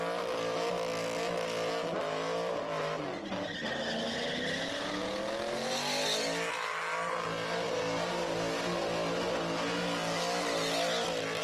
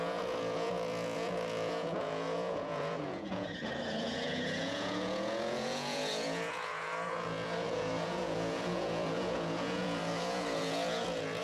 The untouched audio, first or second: first